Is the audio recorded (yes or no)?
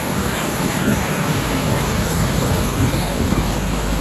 no